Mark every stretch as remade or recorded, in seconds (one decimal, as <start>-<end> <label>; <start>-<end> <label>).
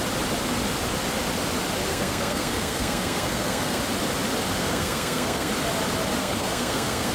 0.0-1.9 recorded; 1.9-3.8 remade; 3.8-4.6 recorded; 4.6-5.5 remade; 5.5-6.2 recorded; 6.2-7.1 remade